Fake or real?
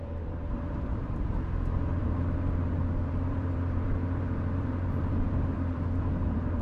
fake